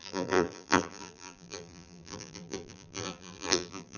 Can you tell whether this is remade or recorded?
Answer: remade